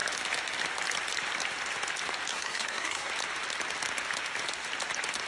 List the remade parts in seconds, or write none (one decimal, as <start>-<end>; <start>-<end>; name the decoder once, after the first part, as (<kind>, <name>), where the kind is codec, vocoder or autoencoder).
2.3-3.1 (codec, SNAC)